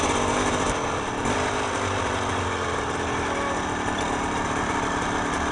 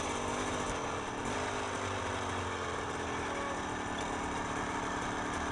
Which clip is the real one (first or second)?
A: second